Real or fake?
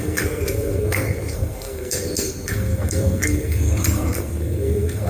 fake